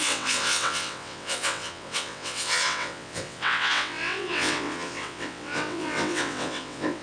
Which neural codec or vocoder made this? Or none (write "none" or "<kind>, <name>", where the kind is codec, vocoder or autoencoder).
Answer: vocoder, WaveNeXt